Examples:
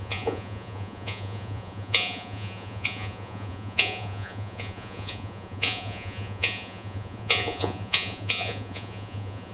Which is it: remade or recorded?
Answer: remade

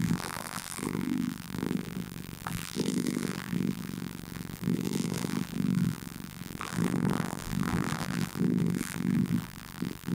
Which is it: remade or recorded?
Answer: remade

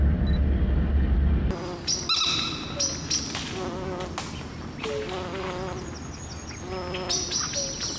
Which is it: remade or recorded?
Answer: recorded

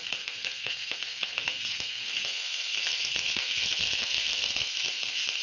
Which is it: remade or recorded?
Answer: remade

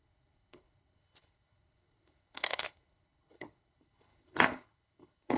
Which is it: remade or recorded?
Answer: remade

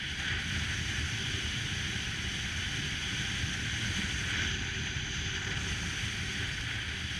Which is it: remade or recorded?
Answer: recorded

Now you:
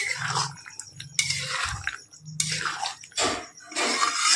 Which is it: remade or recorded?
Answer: recorded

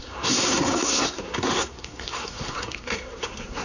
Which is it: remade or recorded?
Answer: remade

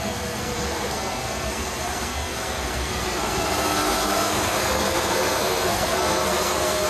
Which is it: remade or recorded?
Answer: remade